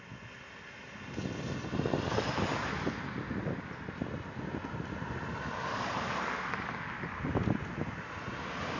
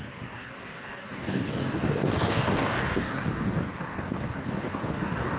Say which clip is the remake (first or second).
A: second